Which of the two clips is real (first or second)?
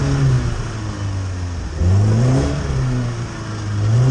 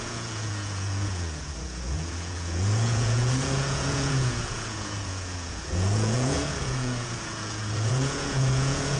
first